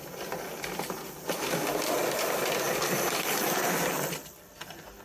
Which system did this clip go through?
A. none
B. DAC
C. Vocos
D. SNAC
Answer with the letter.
A